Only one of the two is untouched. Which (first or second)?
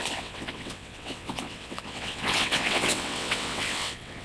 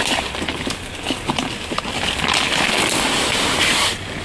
second